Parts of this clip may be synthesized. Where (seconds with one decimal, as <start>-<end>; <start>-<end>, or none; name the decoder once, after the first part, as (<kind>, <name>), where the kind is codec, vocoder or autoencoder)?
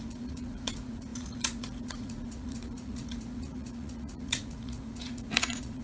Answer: 0.0-5.8 (vocoder, Vocos)